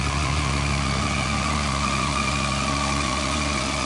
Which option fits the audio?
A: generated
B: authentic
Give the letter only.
A